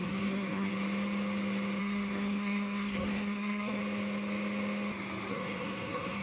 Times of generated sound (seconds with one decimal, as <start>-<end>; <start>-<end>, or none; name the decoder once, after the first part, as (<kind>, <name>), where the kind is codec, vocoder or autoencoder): 0.0-0.7 (codec, SNAC); 1.8-3.8; 5.3-6.2